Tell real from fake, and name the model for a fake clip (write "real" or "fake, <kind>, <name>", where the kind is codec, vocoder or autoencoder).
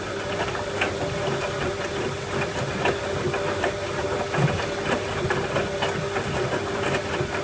real